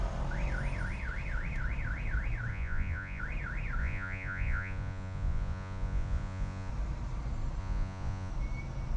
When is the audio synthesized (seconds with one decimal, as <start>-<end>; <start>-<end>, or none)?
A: 2.5-3.2; 3.8-6.7; 7.6-8.3